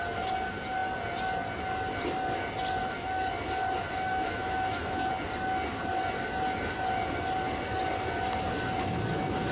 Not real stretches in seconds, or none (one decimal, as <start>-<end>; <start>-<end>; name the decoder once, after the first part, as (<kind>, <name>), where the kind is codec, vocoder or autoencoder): 2.8-3.3 (autoencoder, DAC-VAE); 4.1-5.1